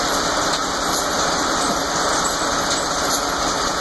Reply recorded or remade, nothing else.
recorded